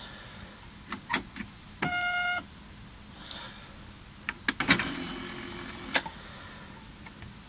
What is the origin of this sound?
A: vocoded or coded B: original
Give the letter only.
B